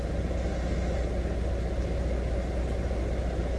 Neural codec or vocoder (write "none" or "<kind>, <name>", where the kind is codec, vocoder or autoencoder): none